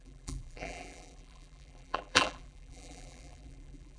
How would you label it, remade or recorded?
remade